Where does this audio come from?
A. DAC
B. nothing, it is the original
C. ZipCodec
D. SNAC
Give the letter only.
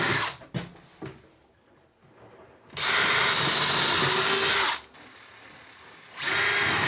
B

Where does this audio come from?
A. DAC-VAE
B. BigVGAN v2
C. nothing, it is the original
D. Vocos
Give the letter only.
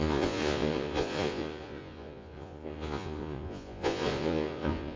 D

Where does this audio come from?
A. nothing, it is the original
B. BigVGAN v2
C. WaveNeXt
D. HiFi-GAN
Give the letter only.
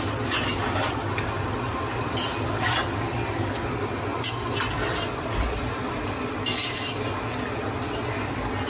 A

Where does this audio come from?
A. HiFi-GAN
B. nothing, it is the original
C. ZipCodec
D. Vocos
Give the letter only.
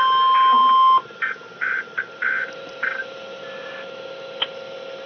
B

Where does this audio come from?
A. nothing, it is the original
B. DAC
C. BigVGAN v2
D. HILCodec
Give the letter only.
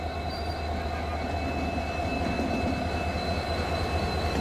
A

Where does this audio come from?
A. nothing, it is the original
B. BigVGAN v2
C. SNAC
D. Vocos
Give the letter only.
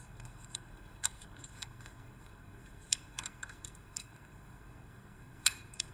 C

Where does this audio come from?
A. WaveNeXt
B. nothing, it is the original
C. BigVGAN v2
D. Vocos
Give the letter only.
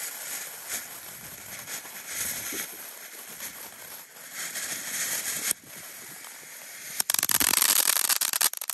C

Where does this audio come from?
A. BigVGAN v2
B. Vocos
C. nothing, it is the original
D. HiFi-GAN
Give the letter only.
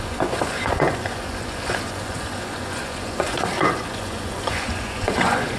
B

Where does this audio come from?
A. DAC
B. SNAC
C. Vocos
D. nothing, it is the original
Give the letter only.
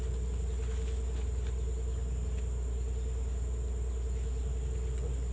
D